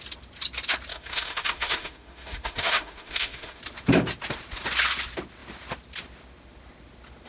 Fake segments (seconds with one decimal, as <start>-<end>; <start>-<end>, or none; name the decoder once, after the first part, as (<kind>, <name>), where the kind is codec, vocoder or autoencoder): 0.9-3.6 (autoencoder, DAC-VAE)